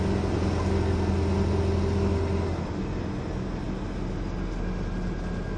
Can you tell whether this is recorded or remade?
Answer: recorded